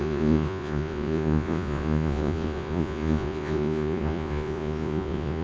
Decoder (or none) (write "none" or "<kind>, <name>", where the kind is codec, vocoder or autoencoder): vocoder, Vocos